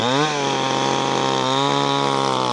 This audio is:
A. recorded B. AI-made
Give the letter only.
A